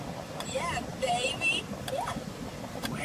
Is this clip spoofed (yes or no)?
no